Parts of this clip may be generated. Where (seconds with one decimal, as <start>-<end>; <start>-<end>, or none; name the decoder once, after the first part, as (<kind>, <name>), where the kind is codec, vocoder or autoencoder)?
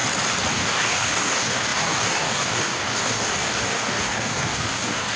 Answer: 0.5-5.2 (codec, DAC)